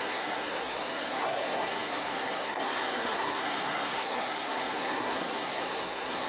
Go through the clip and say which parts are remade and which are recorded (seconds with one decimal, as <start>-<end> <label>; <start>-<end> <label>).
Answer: 0.0-6.3 remade

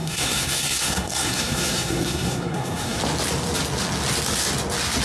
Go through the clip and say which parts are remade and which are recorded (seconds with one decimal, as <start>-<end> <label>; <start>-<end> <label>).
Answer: 0.0-3.0 remade; 3.0-5.0 recorded

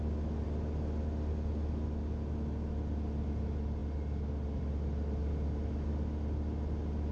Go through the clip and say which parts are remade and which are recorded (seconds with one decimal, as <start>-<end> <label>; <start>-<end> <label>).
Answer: 0.0-7.1 recorded

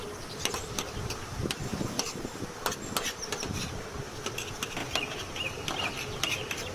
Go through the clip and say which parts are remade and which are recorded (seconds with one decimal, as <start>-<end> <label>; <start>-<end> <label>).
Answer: 0.0-6.7 recorded

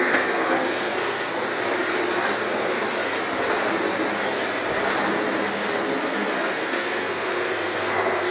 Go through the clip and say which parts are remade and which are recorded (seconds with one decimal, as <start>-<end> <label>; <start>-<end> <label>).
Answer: 0.0-1.3 remade; 1.3-5.9 recorded; 5.9-8.3 remade

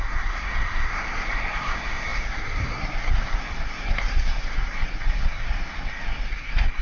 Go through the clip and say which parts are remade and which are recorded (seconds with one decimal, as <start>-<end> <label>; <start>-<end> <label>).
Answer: 0.0-6.8 remade

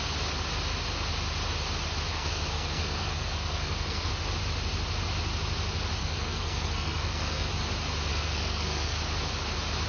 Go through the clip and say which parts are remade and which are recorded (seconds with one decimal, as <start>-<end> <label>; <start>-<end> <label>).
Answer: 0.0-2.1 recorded; 2.1-4.1 remade; 4.1-6.0 recorded; 6.0-7.5 remade; 7.5-8.1 recorded; 8.1-9.0 remade; 9.0-9.9 recorded

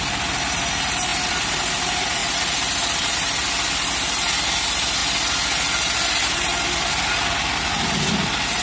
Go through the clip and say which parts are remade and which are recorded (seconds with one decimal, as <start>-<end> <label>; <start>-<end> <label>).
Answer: 0.0-8.6 recorded